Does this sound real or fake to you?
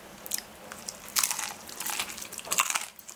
fake